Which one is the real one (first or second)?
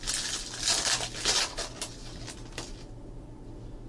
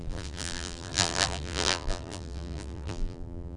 first